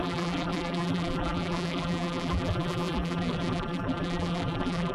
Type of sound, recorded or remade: remade